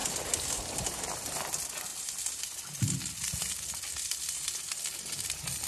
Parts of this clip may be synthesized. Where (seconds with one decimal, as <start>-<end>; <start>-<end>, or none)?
none